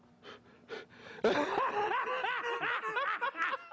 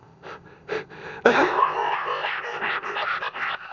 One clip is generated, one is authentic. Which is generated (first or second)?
second